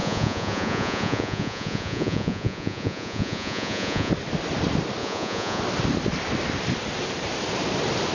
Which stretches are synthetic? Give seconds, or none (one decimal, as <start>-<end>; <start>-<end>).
0.0-4.1; 5.0-5.6